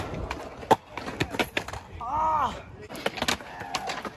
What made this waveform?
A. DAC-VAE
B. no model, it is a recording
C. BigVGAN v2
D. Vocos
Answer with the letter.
B